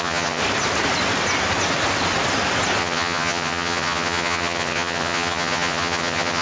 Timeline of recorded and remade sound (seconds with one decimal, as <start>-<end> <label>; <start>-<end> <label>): 0.0-0.4 remade; 0.4-2.8 recorded; 2.8-6.4 remade

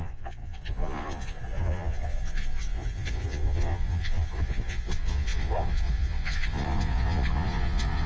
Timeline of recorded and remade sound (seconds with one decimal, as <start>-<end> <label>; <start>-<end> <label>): 0.0-8.1 remade

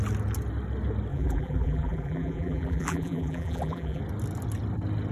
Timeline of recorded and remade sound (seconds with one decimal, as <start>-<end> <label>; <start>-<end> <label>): 0.0-1.1 recorded; 1.1-4.0 remade; 4.0-5.1 recorded

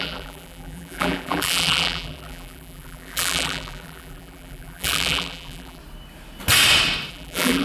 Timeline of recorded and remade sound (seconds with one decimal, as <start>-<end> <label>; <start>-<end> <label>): 0.0-5.8 remade; 5.8-7.1 recorded; 7.1-7.6 remade

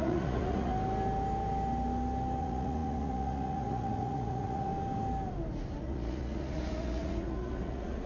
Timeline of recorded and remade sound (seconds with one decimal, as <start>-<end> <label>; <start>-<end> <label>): 0.0-0.7 remade; 0.7-2.4 recorded; 2.4-4.7 remade; 4.7-5.8 recorded; 5.8-8.1 remade

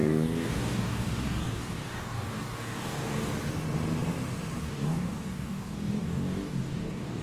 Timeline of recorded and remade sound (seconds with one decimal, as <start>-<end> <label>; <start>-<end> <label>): 0.0-3.3 remade; 3.3-4.6 recorded; 4.6-7.2 remade

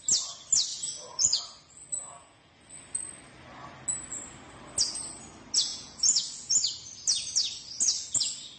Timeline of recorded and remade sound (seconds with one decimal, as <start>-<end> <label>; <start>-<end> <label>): 0.0-0.7 recorded; 0.7-1.4 remade; 1.4-2.0 recorded; 2.0-2.5 remade; 2.5-5.7 recorded; 5.7-6.5 remade; 6.5-8.6 recorded

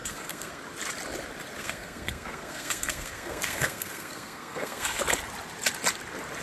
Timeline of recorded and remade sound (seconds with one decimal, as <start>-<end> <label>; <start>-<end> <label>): 0.0-0.6 remade; 0.6-1.6 recorded; 1.6-5.0 remade; 5.0-6.4 recorded